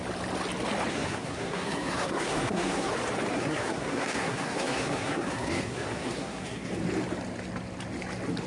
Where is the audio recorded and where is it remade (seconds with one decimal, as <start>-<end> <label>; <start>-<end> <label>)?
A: 0.0-0.9 recorded; 0.9-2.9 remade; 2.9-3.3 recorded; 3.3-6.7 remade; 6.7-8.5 recorded